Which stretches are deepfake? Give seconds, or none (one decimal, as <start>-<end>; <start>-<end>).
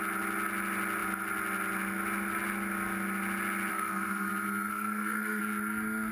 3.7-4.3; 4.7-5.4